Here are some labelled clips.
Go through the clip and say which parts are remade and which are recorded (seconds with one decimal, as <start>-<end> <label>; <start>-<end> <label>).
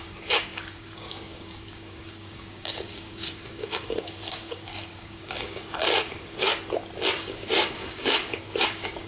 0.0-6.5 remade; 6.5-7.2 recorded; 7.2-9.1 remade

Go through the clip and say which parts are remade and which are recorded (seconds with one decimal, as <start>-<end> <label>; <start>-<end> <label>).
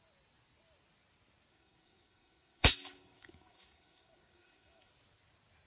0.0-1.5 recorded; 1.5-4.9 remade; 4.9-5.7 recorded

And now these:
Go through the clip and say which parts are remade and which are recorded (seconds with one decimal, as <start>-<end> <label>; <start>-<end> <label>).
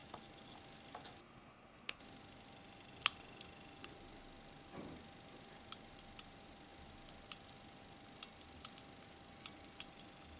0.0-1.2 recorded; 1.2-2.0 remade; 2.0-10.4 recorded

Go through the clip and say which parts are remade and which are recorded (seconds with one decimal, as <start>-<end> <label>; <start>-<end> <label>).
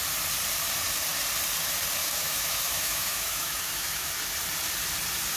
0.0-2.0 recorded; 2.0-4.1 remade; 4.1-5.4 recorded